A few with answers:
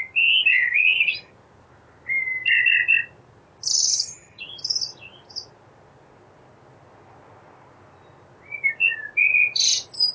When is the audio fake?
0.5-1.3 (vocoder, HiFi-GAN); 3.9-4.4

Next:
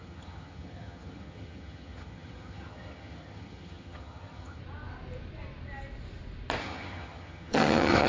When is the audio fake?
0.0-4.6 (vocoder, HiFi-GAN); 6.6-8.1